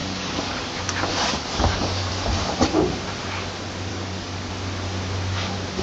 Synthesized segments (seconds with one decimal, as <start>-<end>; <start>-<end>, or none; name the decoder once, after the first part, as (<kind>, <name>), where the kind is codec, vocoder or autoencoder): 0.0-0.6 (codec, DAC); 1.1-2.1; 3.9-4.5